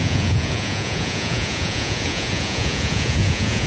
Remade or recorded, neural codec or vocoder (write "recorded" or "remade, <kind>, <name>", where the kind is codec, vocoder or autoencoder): remade, vocoder, Vocos